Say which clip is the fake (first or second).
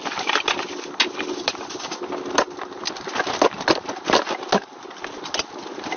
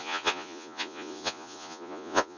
second